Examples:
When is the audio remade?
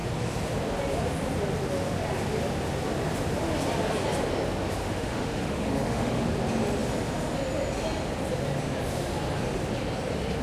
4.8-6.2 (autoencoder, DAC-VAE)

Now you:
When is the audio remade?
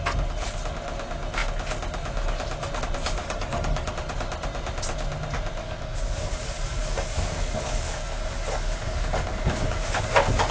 3.2-3.9 (codec, DAC); 5.6-10.0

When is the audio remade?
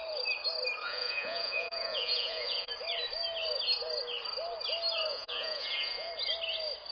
0.8-2.7 (vocoder, Vocos); 5.1-6.1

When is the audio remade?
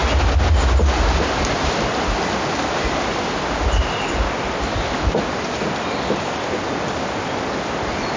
none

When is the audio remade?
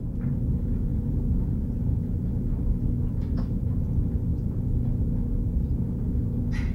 0.9-2.2 (vocoder, Vocos); 4.3-5.0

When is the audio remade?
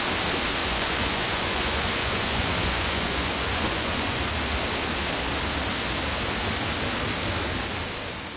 0.6-4.2 (vocoder, Vocos)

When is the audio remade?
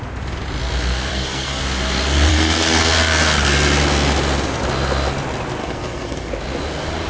1.1-1.6 (codec, SNAC); 2.3-2.9; 5.6-6.3